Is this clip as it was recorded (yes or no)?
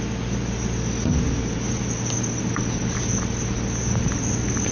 yes